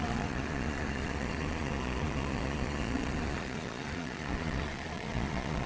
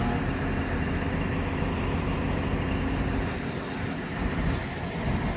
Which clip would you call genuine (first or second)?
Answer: second